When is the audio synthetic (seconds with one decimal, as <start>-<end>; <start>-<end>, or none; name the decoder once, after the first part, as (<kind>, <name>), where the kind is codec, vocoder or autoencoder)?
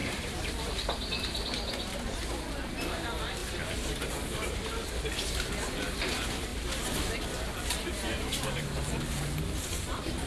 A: 0.0-0.7 (vocoder, BigVGAN v2); 6.5-9.2